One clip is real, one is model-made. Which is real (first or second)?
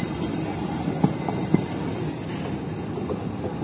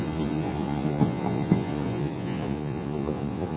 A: first